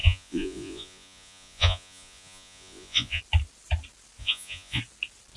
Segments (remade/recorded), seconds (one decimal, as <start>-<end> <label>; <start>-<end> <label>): 0.0-3.2 remade; 3.2-4.2 recorded; 4.2-4.8 remade; 4.8-5.4 recorded